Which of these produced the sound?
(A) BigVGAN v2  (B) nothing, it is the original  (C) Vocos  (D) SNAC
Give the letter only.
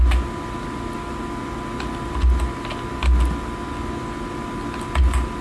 B